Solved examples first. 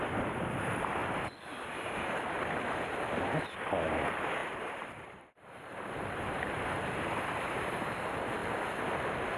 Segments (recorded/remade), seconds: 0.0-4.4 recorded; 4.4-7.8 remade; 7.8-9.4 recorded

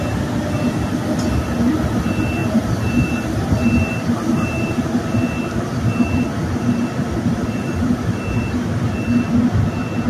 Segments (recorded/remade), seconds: 0.0-2.4 recorded; 2.4-5.0 remade; 5.0-10.1 recorded